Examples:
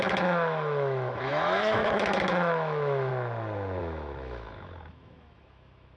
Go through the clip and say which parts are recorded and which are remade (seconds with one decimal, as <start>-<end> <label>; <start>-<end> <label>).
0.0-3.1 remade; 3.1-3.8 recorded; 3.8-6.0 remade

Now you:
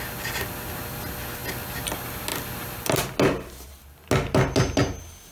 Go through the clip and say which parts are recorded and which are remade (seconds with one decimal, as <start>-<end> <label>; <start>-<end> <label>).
0.0-5.3 recorded

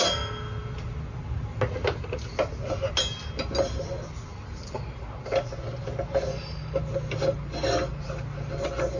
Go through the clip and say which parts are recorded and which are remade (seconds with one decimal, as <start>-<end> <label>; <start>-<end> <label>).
0.0-6.3 recorded; 6.3-6.8 remade; 6.8-9.0 recorded

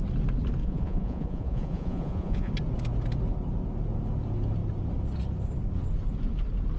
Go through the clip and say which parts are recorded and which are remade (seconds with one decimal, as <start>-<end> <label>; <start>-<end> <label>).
0.0-0.6 recorded; 0.6-2.5 remade; 2.5-6.8 recorded

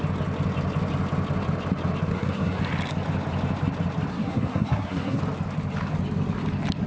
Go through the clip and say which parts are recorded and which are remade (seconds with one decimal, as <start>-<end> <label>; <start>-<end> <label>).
0.0-2.1 recorded; 2.1-2.6 remade; 2.6-4.1 recorded; 4.1-5.2 remade; 5.2-6.9 recorded

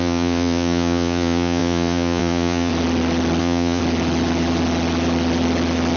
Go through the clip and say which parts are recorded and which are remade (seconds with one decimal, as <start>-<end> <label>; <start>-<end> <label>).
0.0-2.7 remade; 2.7-3.4 recorded; 3.4-3.8 remade; 3.8-6.0 recorded

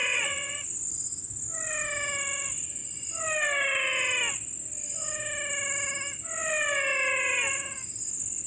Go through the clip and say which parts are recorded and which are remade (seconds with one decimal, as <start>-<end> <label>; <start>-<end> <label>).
0.0-0.6 remade; 0.6-8.5 recorded

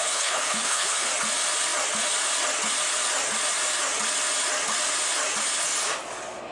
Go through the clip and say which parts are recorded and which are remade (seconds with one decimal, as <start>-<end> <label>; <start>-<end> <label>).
0.0-1.1 remade; 1.1-6.5 recorded